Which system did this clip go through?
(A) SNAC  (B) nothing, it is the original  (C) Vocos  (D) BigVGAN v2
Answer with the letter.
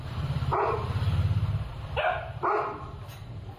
D